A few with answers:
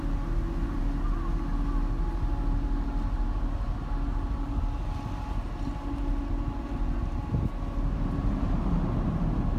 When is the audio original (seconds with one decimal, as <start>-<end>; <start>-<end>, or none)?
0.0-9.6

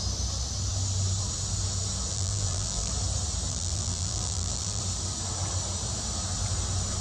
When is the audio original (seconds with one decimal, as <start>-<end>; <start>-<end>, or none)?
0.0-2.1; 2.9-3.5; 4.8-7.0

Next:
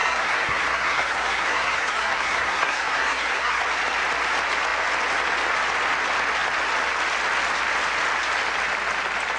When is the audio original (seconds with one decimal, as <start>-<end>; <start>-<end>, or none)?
3.6-9.4